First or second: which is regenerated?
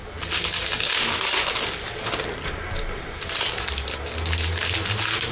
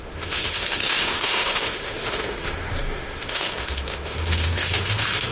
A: second